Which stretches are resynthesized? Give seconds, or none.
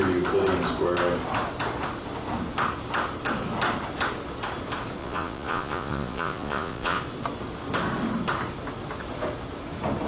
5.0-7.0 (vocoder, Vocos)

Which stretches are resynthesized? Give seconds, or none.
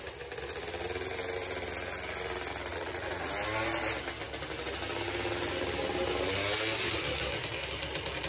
2.7-3.3 (vocoder, Vocos)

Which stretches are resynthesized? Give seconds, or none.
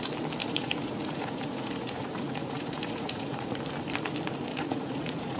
0.4-3.6 (vocoder, Vocos); 4.5-5.4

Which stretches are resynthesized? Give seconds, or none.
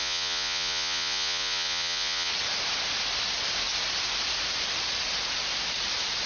0.0-2.3 (vocoder, Vocos)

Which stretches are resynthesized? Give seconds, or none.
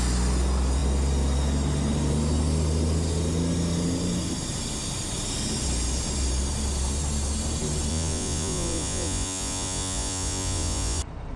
7.9-11.0 (vocoder, Vocos)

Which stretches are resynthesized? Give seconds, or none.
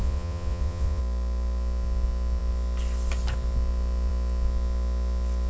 0.0-1.0 (vocoder, Vocos)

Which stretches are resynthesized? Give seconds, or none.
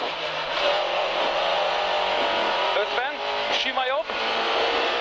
0.4-1.8 (vocoder, Vocos); 2.4-2.9